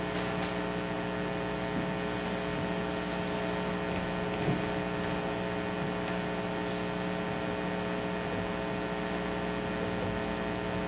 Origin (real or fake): real